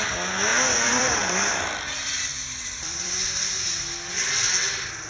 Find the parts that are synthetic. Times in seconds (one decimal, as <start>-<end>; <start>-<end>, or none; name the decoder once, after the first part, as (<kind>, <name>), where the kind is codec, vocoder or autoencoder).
0.5-3.6 (vocoder, BigVGAN v2)